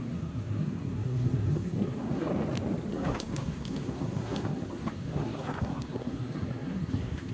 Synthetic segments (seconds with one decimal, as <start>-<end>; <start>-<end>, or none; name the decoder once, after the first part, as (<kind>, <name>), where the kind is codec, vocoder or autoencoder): 0.0-2.3 (codec, SNAC); 2.9-7.3